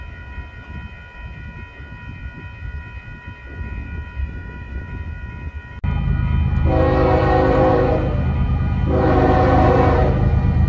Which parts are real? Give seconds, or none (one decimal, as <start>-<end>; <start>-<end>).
0.0-4.2; 4.8-10.7